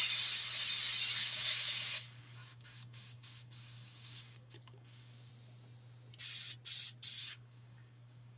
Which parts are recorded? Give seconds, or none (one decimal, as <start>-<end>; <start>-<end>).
0.0-1.2; 5.3-7.2